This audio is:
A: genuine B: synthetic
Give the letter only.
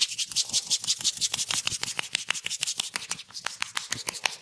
A